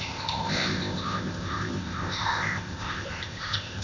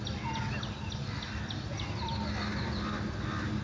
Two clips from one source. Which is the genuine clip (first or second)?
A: second